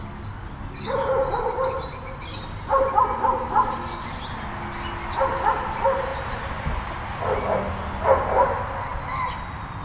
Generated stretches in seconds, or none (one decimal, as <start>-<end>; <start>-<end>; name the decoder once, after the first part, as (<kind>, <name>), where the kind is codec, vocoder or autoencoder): none